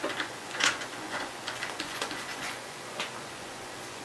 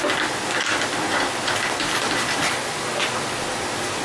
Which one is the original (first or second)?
second